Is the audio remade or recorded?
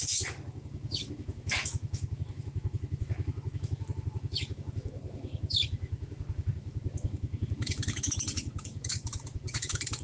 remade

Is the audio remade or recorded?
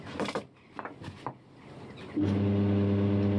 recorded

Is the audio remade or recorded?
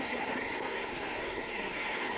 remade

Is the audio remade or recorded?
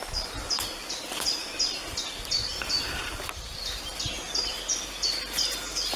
recorded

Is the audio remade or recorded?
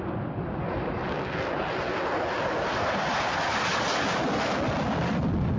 recorded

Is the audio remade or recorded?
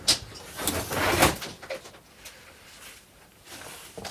recorded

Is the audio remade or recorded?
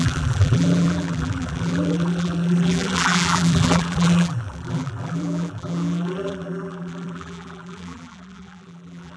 remade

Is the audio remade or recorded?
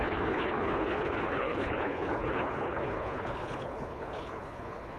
remade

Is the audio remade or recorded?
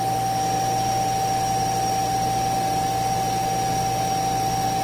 recorded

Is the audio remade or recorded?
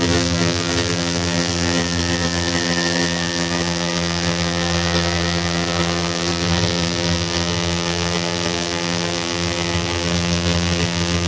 remade